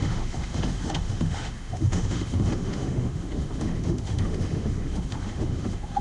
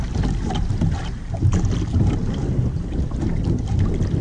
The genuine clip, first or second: second